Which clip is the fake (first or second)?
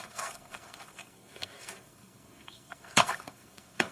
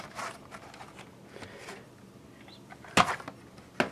first